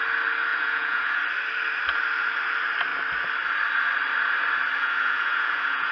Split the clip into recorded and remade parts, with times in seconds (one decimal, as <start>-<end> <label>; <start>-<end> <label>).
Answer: 0.0-0.5 recorded; 0.5-1.2 remade; 1.2-4.8 recorded; 4.8-5.9 remade